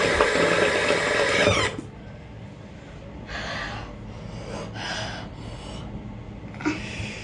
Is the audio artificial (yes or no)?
no